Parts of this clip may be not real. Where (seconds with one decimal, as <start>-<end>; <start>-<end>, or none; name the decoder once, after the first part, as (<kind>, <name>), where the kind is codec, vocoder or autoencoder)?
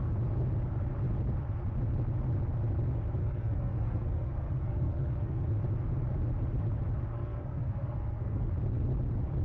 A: 3.2-5.4 (codec, SNAC); 7.1-8.5